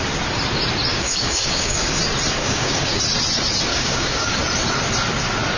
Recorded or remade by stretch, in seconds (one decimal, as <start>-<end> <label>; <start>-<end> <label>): 0.0-0.9 recorded; 0.9-2.0 remade; 2.0-2.4 recorded; 2.4-3.0 remade; 3.0-3.7 recorded; 3.7-4.4 remade; 4.4-5.6 recorded